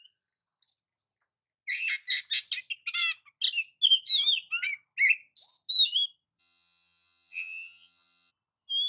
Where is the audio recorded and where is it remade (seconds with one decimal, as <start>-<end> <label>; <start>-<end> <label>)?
0.0-6.4 recorded; 6.4-8.3 remade; 8.3-8.9 recorded